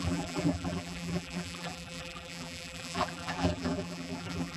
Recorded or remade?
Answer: remade